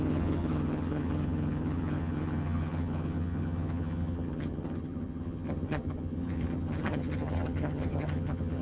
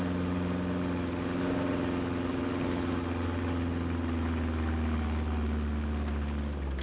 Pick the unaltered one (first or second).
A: second